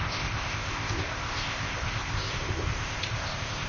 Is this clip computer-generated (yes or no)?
yes